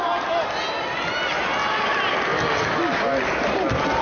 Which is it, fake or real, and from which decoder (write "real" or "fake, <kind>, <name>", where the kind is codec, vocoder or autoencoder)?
real